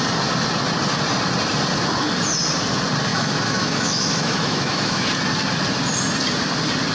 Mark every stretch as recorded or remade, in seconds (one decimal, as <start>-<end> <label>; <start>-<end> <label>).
0.0-3.1 recorded; 3.1-5.1 remade; 5.1-6.9 recorded